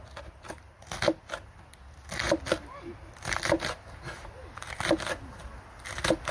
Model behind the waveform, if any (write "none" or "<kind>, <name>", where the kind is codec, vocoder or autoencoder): none